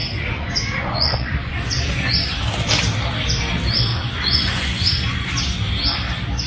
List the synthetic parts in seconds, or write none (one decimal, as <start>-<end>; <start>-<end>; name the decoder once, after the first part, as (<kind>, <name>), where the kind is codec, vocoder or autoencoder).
0.0-2.1 (vocoder, Vocos); 3.9-5.3